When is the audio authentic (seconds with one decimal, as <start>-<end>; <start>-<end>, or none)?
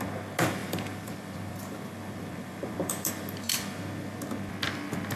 0.0-0.6; 3.1-5.2